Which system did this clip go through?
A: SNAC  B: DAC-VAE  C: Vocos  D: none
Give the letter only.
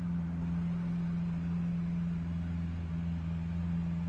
D